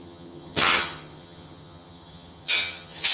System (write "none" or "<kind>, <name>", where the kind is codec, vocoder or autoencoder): vocoder, HiFi-GAN